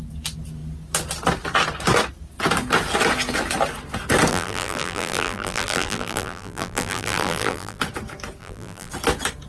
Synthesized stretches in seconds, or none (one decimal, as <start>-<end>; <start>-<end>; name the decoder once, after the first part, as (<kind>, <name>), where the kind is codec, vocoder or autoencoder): 4.3-7.8 (vocoder, BigVGAN v2); 8.4-8.9